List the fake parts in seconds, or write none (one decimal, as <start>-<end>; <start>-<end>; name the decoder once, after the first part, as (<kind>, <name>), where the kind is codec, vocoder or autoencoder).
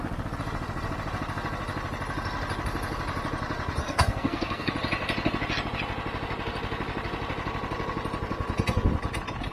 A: 3.8-4.7 (codec, SNAC)